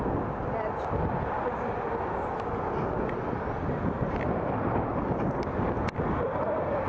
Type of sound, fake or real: real